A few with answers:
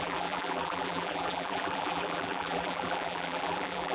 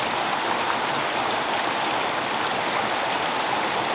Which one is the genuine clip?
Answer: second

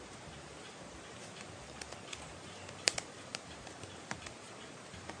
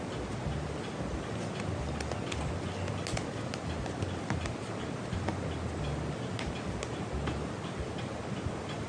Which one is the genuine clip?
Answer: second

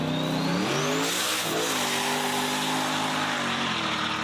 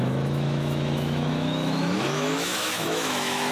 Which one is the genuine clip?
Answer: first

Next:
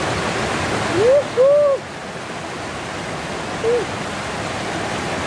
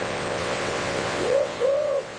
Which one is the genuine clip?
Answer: first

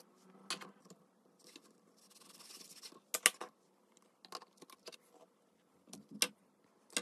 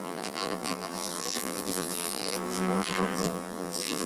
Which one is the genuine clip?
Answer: first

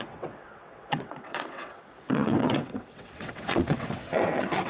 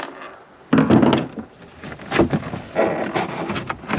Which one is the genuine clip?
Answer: second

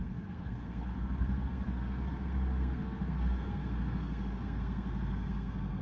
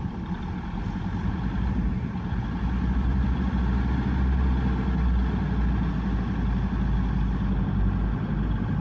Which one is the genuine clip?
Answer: second